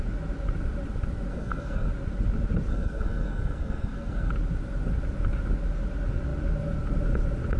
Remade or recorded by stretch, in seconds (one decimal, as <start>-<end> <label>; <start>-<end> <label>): 0.0-1.3 recorded; 1.3-1.9 remade; 1.9-2.7 recorded; 2.7-4.3 remade; 4.3-7.6 recorded